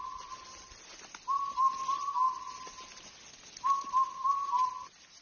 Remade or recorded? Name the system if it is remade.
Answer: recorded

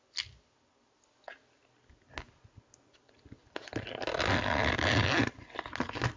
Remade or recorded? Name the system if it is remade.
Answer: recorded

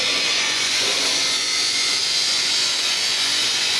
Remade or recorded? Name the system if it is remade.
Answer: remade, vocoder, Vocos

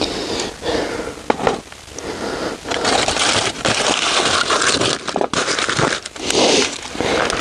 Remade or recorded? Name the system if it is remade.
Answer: recorded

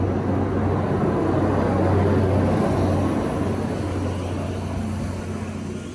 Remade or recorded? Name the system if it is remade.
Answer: recorded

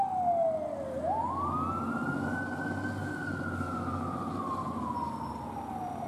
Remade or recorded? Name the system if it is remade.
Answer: recorded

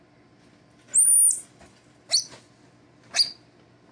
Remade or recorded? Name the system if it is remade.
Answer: recorded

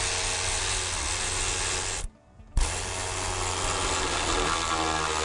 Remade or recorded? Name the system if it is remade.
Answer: recorded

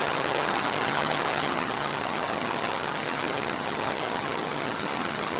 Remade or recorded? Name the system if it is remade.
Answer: remade, vocoder, HiFi-GAN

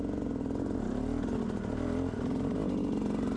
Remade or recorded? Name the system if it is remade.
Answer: recorded